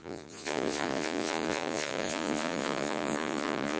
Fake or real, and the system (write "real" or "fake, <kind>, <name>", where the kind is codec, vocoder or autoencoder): fake, vocoder, Vocos